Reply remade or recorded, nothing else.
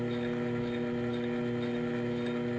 recorded